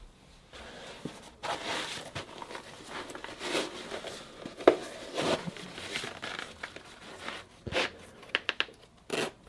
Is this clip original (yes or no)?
yes